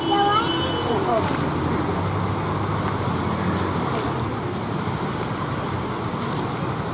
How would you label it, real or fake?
real